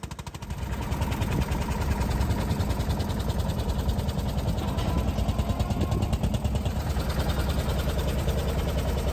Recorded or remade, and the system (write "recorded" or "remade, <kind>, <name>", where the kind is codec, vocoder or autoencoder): recorded